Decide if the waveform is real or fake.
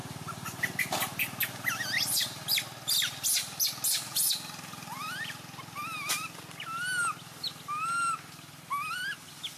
real